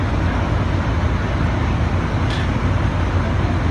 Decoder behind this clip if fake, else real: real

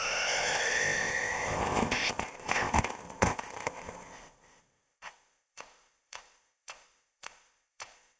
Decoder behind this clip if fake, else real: fake, codec, ZipCodec